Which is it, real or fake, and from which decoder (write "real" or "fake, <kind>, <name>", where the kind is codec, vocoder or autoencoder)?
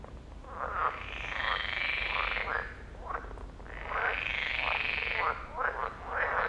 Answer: real